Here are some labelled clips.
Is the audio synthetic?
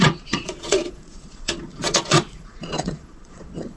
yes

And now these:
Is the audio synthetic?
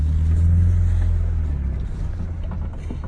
no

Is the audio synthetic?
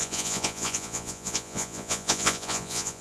yes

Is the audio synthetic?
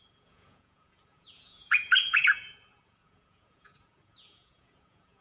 yes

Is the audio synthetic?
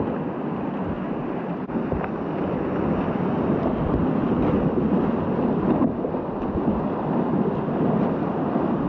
no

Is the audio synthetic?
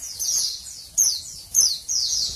yes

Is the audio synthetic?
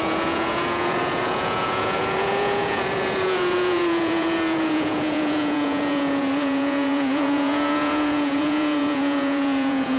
yes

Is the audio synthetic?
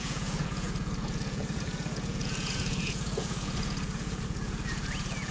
yes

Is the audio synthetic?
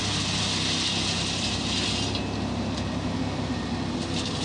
no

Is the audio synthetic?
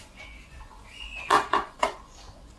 yes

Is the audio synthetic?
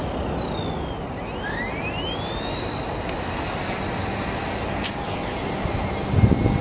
no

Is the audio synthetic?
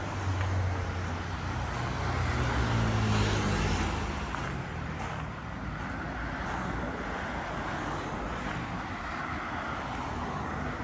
no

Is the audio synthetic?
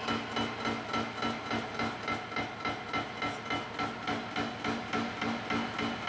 no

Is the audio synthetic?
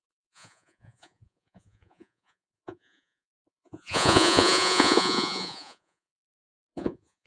yes